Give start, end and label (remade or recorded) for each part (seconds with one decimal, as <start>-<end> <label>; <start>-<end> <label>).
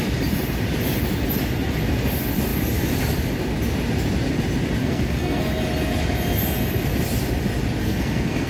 0.0-4.8 recorded; 4.8-5.4 remade; 5.4-7.8 recorded; 7.8-8.5 remade